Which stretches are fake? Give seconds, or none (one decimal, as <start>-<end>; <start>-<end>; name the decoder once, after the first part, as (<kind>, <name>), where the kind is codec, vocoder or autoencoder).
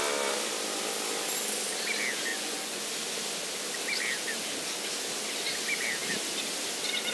2.3-2.8 (vocoder, Vocos)